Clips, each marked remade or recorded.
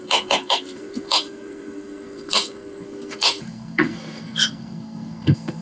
remade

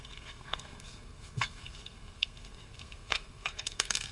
remade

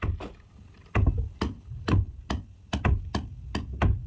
recorded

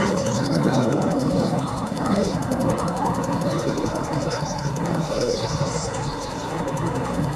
remade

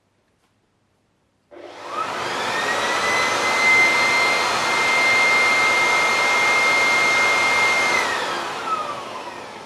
recorded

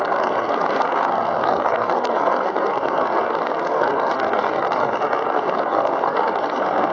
remade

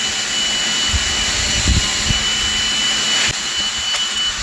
recorded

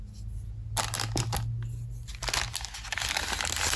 recorded